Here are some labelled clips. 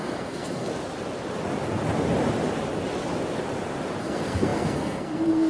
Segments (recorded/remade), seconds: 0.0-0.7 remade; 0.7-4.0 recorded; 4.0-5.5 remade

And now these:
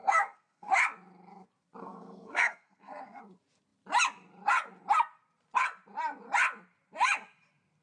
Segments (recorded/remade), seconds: 0.0-0.7 remade; 0.7-1.8 recorded; 1.8-3.2 remade; 3.2-7.8 recorded

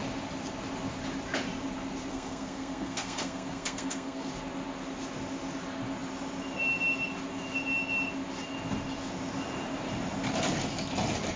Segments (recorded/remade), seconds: 0.0-2.1 recorded; 2.1-4.3 remade; 4.3-11.4 recorded